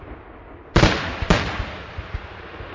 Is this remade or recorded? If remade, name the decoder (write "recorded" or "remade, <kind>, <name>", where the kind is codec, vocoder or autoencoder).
recorded